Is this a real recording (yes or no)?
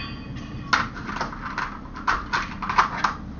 yes